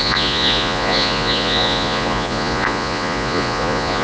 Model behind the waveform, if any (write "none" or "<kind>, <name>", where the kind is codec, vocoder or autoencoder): vocoder, Vocos